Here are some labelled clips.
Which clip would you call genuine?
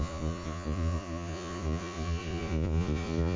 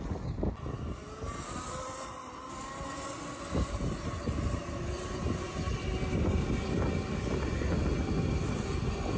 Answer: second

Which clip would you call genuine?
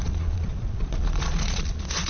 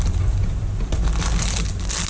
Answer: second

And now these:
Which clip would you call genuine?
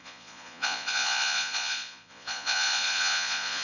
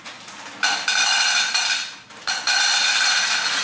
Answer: second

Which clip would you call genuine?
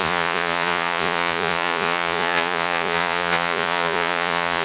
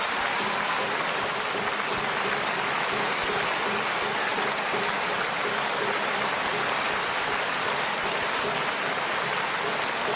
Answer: second